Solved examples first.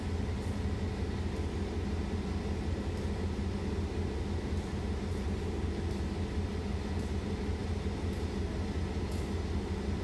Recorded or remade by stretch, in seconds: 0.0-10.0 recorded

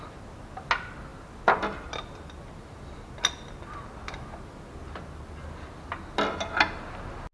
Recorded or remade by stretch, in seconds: 0.0-7.3 recorded

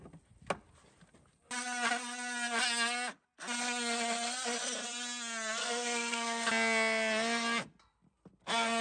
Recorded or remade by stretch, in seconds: 0.0-5.6 recorded; 5.6-6.5 remade; 6.5-8.8 recorded

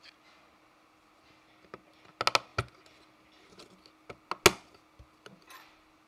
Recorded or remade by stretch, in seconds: 0.0-6.1 recorded

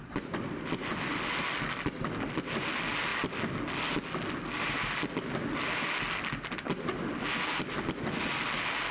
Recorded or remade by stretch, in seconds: 0.0-8.9 recorded